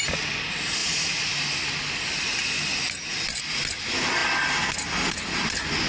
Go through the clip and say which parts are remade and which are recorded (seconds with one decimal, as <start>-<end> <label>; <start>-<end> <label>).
0.0-5.9 recorded